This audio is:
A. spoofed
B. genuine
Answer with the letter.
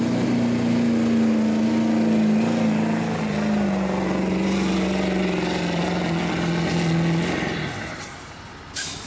B